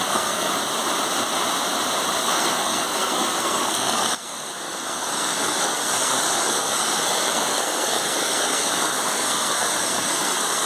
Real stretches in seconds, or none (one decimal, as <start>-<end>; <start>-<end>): 0.5-2.2